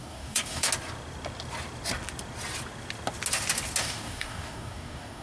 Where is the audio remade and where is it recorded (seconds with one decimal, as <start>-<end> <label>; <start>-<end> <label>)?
0.0-0.7 remade; 0.7-3.8 recorded; 3.8-5.2 remade